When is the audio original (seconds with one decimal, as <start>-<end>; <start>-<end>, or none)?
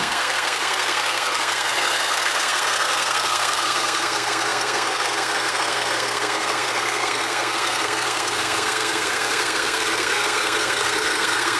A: none